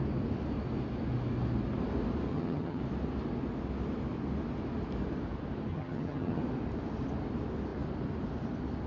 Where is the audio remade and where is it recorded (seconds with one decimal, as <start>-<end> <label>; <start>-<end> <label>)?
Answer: 0.0-2.3 recorded; 2.3-2.8 remade; 2.8-5.7 recorded; 5.7-6.4 remade; 6.4-8.9 recorded